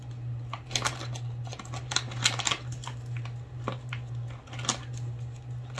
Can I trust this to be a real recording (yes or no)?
yes